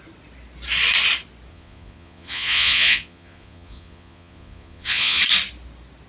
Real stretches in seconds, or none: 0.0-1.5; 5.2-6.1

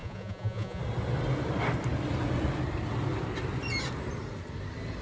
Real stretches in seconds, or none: 0.8-5.0